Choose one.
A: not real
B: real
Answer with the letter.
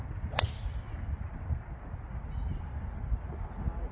B